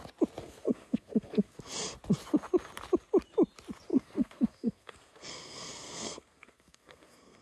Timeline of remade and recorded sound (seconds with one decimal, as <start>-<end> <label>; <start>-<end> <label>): 0.0-0.4 recorded; 0.4-1.6 remade; 1.6-3.9 recorded; 3.9-7.4 remade